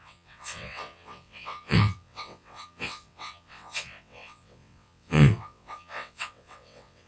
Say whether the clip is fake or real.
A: fake